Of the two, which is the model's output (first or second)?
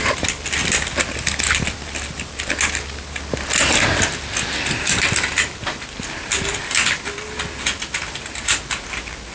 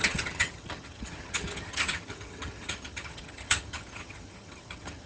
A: second